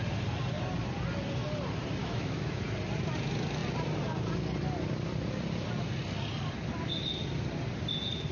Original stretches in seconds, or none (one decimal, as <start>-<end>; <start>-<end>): 0.0-2.0; 2.6-8.3